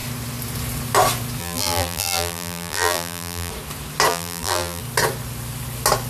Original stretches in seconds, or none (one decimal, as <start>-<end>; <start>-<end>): 0.0-1.4; 3.5-4.1; 4.8-6.1